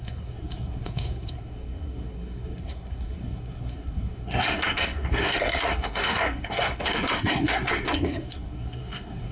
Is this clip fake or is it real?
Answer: fake